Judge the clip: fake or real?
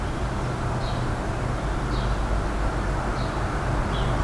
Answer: real